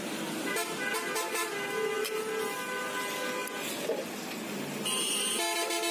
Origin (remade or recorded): recorded